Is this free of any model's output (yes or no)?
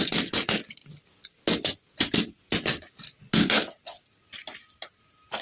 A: yes